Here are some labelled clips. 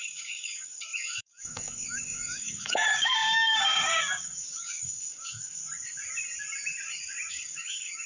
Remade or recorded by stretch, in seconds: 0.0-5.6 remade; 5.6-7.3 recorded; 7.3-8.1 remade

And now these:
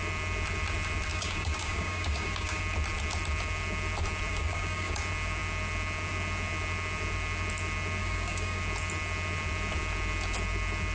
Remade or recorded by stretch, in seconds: 0.0-1.1 recorded; 1.1-2.6 remade; 2.6-4.3 recorded; 4.3-4.9 remade; 4.9-8.0 recorded; 8.0-8.6 remade; 8.6-10.9 recorded

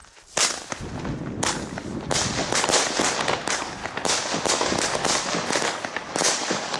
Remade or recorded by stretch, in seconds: 0.0-3.1 recorded; 3.1-3.8 remade; 3.8-4.5 recorded; 4.5-5.0 remade; 5.0-5.5 recorded; 5.5-6.8 remade

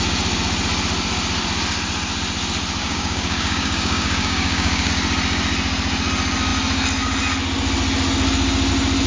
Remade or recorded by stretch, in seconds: 0.0-2.8 recorded; 2.8-4.9 remade; 4.9-9.1 recorded

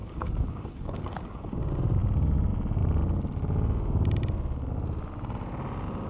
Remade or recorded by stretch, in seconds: 0.0-1.6 remade; 1.6-6.1 recorded

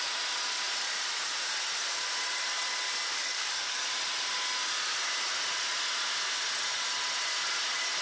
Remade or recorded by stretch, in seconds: 0.0-3.1 recorded; 3.1-3.8 remade; 3.8-8.0 recorded

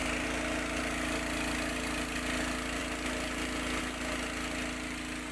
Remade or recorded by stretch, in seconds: 0.0-5.3 recorded

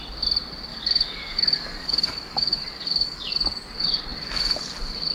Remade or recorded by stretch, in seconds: 0.0-0.7 recorded; 0.7-3.3 remade; 3.3-5.1 recorded